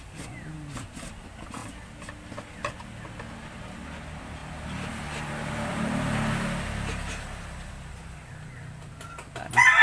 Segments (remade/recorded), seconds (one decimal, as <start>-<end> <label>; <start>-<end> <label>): 0.0-9.8 recorded